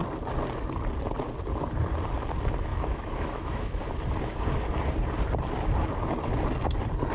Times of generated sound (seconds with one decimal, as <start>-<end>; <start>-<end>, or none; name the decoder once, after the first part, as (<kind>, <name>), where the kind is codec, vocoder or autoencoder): 2.7-3.8 (autoencoder, DAC-VAE)